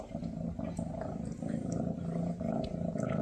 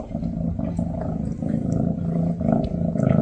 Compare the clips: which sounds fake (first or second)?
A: first